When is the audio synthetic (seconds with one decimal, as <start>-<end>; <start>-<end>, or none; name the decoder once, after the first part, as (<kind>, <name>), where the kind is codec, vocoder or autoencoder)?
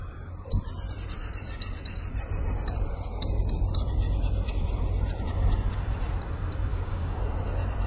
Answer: 6.7-7.2 (codec, DAC)